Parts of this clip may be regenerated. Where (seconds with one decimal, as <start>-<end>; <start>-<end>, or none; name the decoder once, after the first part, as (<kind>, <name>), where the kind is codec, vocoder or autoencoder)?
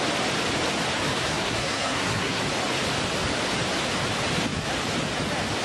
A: 1.2-2.4 (codec, SNAC)